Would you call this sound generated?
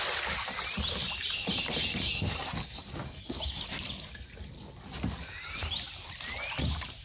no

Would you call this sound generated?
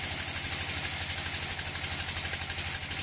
no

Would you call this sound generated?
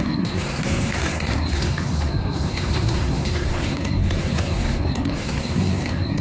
yes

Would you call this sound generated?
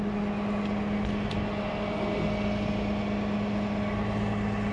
no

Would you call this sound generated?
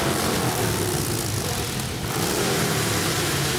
no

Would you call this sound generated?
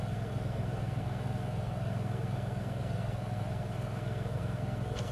yes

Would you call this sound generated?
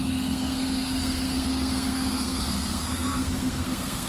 yes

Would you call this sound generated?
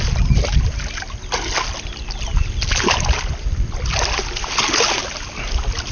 no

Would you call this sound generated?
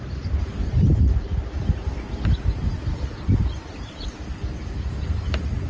no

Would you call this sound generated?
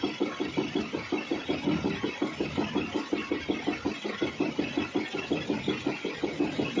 no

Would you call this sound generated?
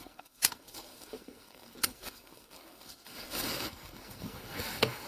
yes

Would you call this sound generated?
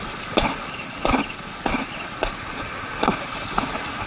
no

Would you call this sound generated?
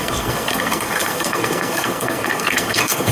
yes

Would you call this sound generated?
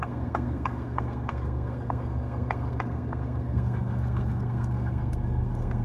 yes